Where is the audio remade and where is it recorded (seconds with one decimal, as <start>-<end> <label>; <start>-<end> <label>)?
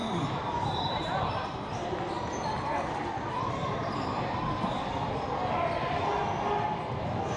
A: 0.0-1.9 remade; 1.9-3.6 recorded; 3.6-4.6 remade; 4.6-7.4 recorded